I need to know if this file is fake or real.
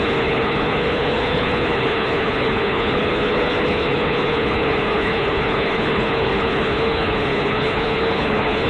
fake